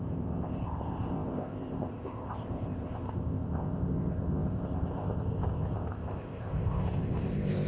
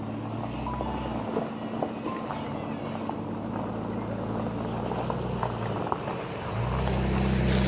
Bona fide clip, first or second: second